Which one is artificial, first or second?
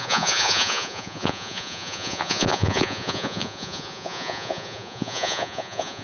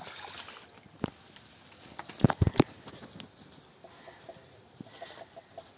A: first